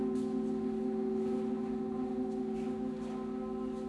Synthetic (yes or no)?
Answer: no